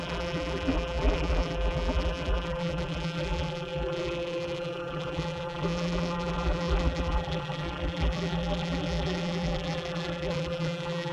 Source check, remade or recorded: remade